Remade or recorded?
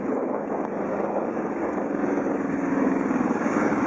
remade